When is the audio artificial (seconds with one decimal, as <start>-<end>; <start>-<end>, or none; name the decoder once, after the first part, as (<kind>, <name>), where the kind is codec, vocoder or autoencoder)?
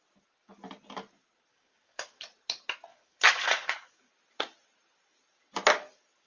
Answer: 1.5-2.2 (codec, DAC); 2.9-4.1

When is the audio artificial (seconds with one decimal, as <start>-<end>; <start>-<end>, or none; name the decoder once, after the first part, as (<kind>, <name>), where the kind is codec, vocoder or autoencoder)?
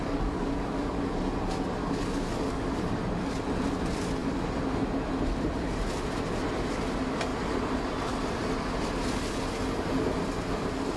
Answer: 0.0-1.3 (codec, DAC); 1.8-3.0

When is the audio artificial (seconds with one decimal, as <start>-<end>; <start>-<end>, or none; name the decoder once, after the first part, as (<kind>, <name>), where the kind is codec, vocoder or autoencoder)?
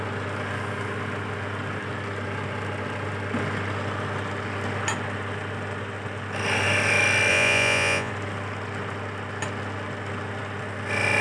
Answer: 7.3-8.1 (vocoder, Vocos)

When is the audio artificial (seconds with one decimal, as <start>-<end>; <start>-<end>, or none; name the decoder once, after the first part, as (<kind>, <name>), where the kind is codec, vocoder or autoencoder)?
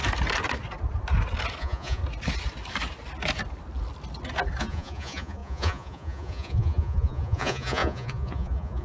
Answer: 1.6-2.0 (vocoder, Vocos); 4.6-8.8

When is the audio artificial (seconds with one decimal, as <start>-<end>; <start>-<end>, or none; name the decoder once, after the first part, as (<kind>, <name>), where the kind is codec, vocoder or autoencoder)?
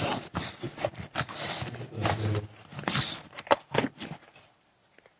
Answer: 2.7-3.7 (vocoder, BigVGAN v2)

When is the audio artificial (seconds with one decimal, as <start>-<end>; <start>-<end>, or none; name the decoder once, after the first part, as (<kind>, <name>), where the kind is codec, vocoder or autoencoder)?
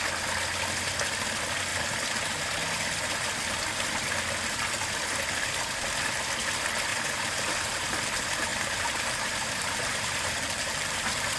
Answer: 6.9-7.9 (vocoder, BigVGAN v2); 8.5-11.4